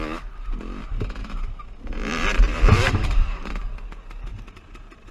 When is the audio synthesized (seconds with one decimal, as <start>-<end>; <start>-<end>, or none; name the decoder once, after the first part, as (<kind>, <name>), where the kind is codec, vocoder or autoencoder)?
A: 1.2-3.5 (vocoder, BigVGAN v2); 4.3-5.1